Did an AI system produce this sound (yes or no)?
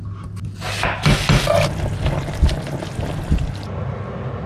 no